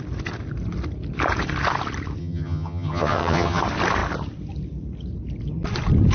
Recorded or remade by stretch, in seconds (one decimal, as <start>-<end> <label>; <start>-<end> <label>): 0.0-2.2 recorded; 2.2-3.6 remade; 3.6-6.1 recorded